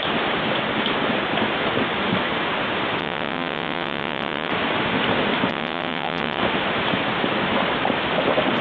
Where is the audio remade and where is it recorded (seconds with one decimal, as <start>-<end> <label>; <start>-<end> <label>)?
0.0-3.0 recorded; 3.0-4.5 remade; 4.5-5.5 recorded; 5.5-6.4 remade; 6.4-8.6 recorded